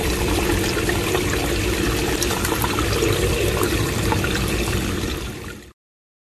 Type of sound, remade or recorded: remade